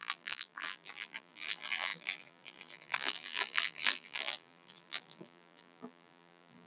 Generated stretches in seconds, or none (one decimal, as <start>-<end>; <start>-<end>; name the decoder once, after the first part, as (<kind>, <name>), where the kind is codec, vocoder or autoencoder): 0.0-6.7 (vocoder, BigVGAN v2)